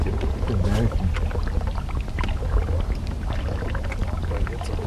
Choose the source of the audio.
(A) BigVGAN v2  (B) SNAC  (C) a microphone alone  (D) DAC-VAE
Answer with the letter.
C